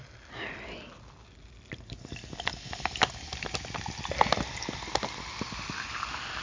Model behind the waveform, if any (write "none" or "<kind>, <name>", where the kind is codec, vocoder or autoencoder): none